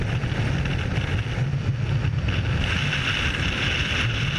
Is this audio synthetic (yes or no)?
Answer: no